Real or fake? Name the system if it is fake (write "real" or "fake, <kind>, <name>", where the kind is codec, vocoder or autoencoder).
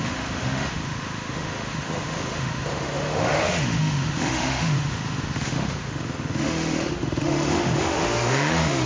fake, autoencoder, DAC-VAE